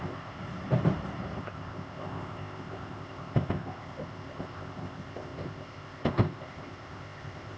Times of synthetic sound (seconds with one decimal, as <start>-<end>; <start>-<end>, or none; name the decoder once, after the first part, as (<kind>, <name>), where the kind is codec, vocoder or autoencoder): 0.0-0.4 (codec, ZipCodec); 1.4-7.6

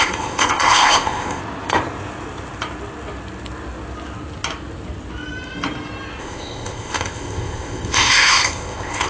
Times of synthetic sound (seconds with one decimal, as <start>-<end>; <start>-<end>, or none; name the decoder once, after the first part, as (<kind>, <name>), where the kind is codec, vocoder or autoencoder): 0.0-1.4 (codec, ZipCodec); 6.2-9.1

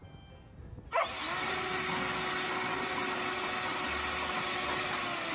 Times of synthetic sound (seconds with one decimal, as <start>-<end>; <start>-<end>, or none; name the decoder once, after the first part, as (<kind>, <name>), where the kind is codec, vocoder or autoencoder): none

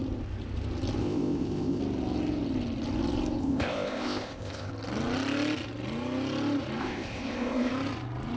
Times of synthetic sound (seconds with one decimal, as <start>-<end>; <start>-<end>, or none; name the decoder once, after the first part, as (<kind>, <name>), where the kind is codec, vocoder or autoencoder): 1.0-1.8 (codec, ZipCodec); 3.4-4.7; 6.8-7.7

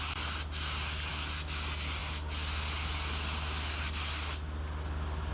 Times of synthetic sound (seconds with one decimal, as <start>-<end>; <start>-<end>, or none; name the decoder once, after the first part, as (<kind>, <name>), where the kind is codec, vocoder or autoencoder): none

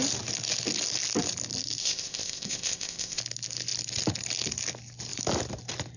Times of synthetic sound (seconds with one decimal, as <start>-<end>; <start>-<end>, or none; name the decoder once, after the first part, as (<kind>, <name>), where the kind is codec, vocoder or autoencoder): 1.8-3.2 (codec, ZipCodec)

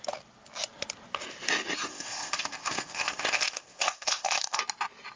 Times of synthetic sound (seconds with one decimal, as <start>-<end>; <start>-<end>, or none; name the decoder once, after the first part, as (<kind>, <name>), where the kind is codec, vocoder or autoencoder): 1.9-4.6 (codec, ZipCodec)

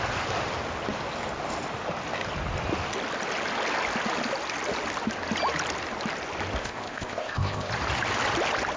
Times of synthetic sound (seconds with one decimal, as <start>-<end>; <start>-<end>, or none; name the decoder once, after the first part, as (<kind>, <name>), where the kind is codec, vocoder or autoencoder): 6.6-7.7 (codec, ZipCodec)